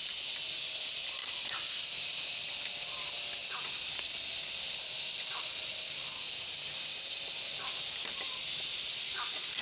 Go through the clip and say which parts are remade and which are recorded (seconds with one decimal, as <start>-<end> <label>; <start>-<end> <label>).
0.0-1.2 recorded; 1.2-2.3 remade; 2.3-9.6 recorded